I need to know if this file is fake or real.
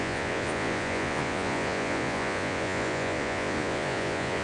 fake